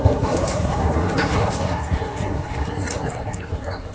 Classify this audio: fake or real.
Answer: fake